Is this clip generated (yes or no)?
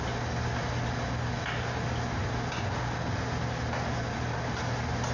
no